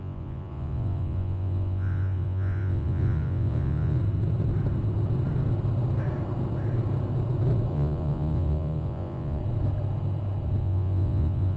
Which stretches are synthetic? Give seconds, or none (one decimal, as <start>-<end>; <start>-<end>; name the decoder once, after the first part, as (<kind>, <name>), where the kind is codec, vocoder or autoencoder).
0.0-4.0 (vocoder, Vocos); 7.7-9.4; 10.6-11.6